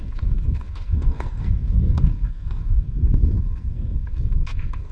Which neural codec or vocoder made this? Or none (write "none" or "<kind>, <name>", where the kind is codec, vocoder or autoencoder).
codec, SNAC